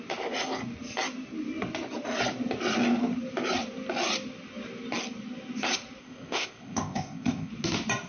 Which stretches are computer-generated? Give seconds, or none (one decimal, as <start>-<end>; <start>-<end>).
6.0-7.5